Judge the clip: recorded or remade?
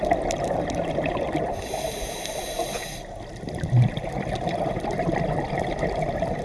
recorded